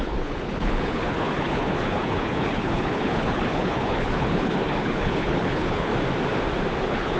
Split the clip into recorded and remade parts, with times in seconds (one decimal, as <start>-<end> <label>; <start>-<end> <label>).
0.0-5.9 remade; 5.9-6.8 recorded; 6.8-7.2 remade